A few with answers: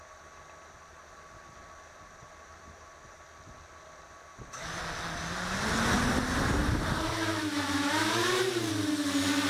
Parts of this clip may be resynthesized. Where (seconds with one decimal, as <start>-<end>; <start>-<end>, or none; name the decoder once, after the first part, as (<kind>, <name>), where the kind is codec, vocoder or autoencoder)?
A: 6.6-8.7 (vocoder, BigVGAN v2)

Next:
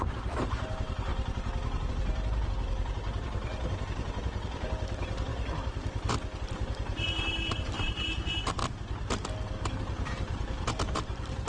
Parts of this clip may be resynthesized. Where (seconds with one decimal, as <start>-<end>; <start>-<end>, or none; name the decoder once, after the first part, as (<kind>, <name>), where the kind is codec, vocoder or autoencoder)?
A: 0.0-1.1 (vocoder, BigVGAN v2); 1.9-5.3; 6.4-8.6; 9.8-11.5

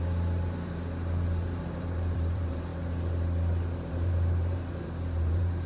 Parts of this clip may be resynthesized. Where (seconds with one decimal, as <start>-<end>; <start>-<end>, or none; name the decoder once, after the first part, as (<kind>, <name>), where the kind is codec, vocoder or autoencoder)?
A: 0.0-2.7 (vocoder, BigVGAN v2); 3.9-5.7

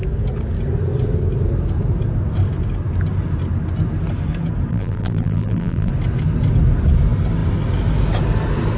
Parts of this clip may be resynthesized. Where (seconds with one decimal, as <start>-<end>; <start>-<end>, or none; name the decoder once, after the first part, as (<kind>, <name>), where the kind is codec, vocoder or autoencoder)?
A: 4.7-5.9 (vocoder, BigVGAN v2)

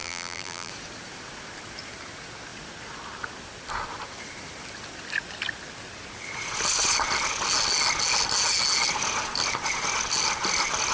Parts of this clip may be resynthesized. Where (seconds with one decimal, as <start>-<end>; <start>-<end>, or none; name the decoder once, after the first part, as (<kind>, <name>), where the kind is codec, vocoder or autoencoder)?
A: 0.0-0.7 (vocoder, BigVGAN v2)

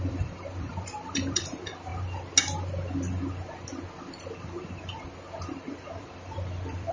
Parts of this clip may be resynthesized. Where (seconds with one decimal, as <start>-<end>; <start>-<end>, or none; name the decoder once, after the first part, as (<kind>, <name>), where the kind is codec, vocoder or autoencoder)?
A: 0.0-1.9 (vocoder, BigVGAN v2); 5.6-6.9

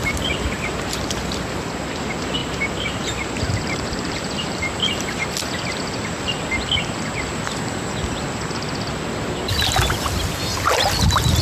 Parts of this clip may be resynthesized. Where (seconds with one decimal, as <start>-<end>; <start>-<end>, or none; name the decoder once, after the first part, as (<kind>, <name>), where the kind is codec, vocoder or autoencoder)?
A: 0.0-1.0 (vocoder, BigVGAN v2); 2.4-5.3

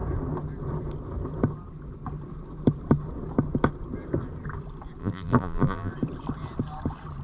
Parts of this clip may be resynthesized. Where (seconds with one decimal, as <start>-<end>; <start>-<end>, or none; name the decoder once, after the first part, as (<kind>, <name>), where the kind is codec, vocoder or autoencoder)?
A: 5.0-5.9 (vocoder, BigVGAN v2)